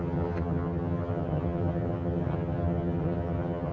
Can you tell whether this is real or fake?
fake